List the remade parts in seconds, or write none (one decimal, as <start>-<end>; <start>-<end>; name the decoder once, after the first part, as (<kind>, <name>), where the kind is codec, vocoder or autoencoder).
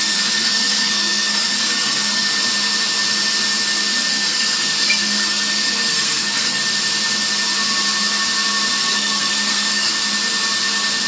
0.0-2.3 (codec, SNAC); 4.1-6.6; 8.8-9.9